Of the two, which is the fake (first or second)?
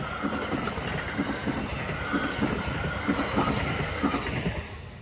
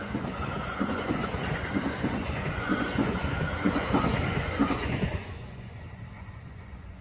second